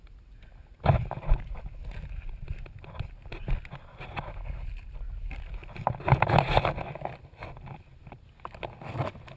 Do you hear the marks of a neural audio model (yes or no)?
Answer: no